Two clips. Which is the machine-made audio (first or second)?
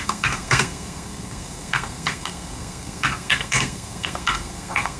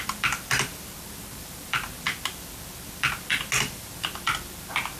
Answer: first